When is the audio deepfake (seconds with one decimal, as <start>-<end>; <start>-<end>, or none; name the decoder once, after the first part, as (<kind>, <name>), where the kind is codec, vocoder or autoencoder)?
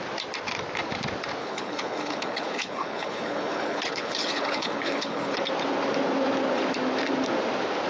1.4-5.4 (codec, HILCodec)